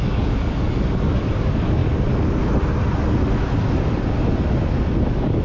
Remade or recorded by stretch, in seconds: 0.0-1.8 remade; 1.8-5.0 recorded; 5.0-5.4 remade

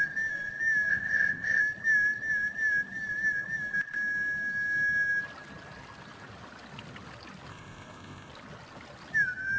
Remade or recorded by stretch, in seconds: 0.0-0.9 recorded; 0.9-1.6 remade; 1.6-7.5 recorded; 7.5-8.3 remade; 8.3-9.6 recorded

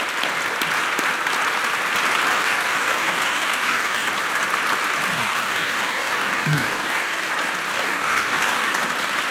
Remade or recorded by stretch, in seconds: 0.0-2.3 recorded; 2.3-4.1 remade; 4.1-5.1 recorded; 5.1-7.3 remade; 7.3-7.7 recorded; 7.7-8.7 remade; 8.7-9.3 recorded

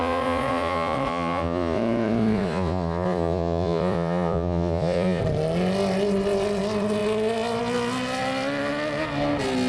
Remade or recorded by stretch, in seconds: 0.0-5.2 remade; 5.2-9.7 recorded

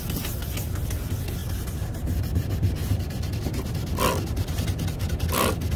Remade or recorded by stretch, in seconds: 0.0-1.4 recorded; 1.4-2.3 remade; 2.3-2.8 recorded; 2.8-3.7 remade; 3.7-5.8 recorded

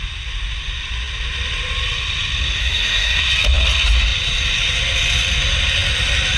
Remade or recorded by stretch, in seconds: 0.0-2.6 recorded; 2.6-3.2 remade; 3.2-6.4 recorded

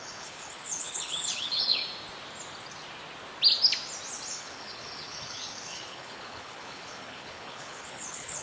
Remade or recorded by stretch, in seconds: 0.0-1.8 remade; 1.8-4.3 recorded; 4.3-8.4 remade